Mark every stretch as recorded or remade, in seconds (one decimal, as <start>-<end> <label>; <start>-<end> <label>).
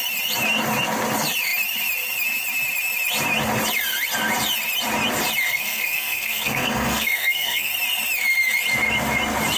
0.0-5.5 recorded; 5.5-7.7 remade; 7.7-9.6 recorded